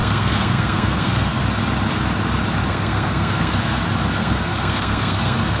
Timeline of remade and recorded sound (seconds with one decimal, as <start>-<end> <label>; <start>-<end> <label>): 0.0-1.4 remade; 1.4-2.7 recorded; 2.7-3.8 remade; 3.8-4.2 recorded; 4.2-5.6 remade

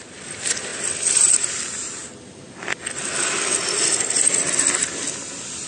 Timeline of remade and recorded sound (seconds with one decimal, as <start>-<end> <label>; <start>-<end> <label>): 0.0-5.7 recorded